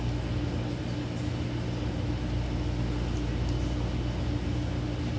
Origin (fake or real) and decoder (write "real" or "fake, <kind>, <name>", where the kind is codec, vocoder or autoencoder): real